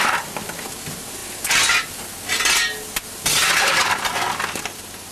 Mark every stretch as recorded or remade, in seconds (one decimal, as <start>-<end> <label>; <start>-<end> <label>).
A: 0.0-5.1 recorded